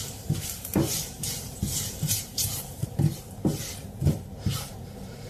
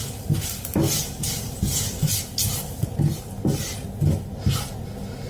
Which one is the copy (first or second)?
first